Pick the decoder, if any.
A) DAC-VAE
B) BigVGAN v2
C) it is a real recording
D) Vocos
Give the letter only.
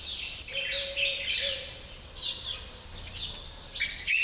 C